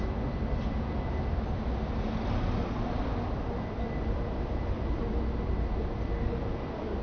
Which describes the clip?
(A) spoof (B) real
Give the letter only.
B